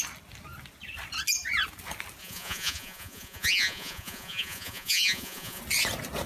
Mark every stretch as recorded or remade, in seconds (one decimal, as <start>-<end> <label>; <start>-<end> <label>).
0.0-2.2 recorded; 2.2-5.6 remade; 5.6-6.3 recorded